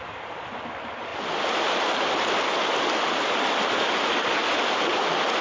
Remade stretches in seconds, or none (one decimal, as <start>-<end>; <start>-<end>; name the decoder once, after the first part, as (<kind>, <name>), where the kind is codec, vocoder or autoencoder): 1.1-2.4 (vocoder, BigVGAN v2)